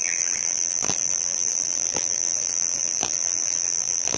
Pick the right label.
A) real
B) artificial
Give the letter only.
B